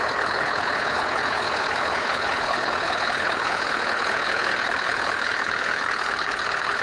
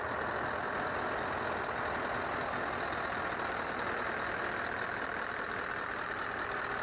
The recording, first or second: second